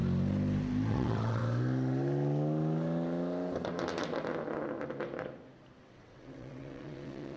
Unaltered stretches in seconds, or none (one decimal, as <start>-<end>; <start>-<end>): 0.0-0.9; 1.4-5.8